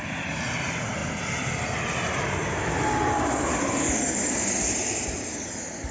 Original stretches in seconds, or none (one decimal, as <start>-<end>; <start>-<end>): 0.0-5.9